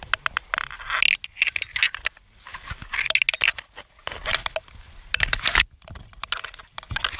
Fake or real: real